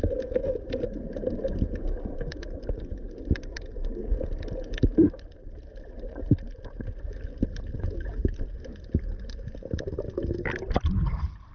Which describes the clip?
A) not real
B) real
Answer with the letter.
B